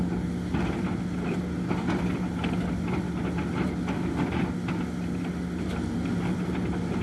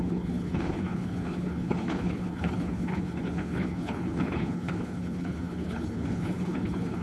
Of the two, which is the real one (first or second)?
first